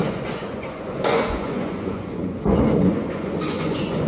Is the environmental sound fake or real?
fake